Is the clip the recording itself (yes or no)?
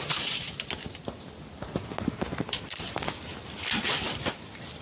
yes